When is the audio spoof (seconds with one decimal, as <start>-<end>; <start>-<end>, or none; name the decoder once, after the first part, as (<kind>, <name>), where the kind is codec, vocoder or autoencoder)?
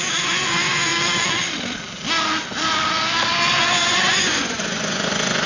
0.0-0.9 (vocoder, Vocos); 3.5-5.5